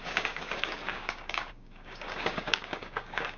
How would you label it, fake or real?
fake